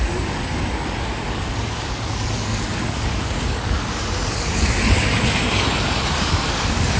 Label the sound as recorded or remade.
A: remade